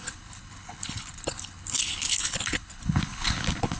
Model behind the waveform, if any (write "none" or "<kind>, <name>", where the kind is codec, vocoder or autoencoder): codec, HILCodec